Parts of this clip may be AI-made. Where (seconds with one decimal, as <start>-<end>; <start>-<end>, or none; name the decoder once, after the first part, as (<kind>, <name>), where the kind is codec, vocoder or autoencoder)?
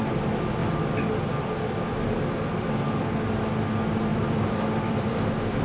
4.1-5.6 (vocoder, BigVGAN v2)